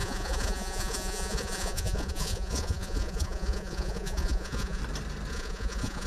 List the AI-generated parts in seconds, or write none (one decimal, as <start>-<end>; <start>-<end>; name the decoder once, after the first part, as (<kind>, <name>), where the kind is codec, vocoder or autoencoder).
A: 0.0-4.8 (vocoder, Vocos); 5.3-6.1